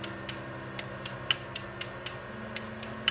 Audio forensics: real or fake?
real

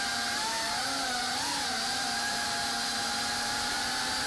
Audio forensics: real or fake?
fake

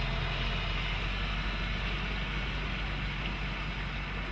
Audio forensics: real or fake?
real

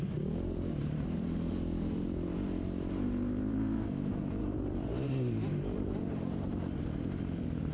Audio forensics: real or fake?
fake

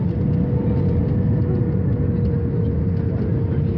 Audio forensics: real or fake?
real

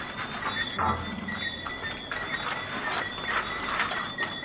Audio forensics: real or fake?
real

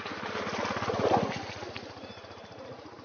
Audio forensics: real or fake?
real